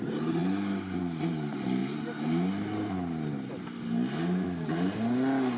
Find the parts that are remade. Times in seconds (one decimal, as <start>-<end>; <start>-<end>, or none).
none